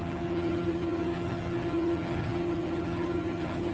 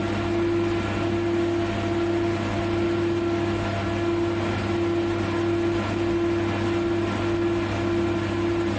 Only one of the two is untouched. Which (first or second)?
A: second